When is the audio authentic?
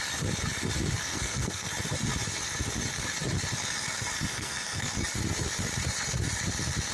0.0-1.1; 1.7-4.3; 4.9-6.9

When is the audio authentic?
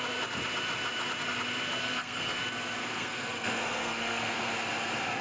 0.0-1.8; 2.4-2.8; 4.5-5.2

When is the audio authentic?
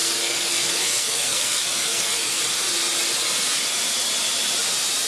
2.4-5.1